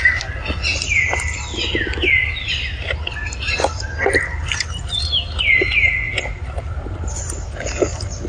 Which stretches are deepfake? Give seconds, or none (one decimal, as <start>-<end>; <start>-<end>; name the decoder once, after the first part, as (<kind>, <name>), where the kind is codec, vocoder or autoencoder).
none